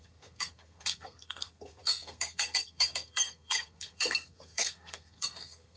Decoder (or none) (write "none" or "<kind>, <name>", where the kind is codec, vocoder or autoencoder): codec, SNAC